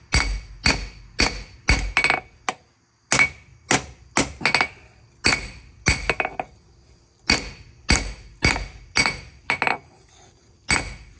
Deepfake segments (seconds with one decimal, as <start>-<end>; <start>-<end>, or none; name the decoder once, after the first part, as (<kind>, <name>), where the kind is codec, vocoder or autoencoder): none